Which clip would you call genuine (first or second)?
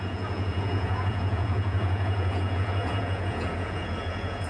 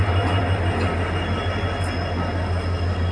second